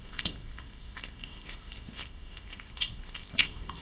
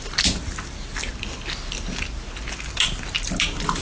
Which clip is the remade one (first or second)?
first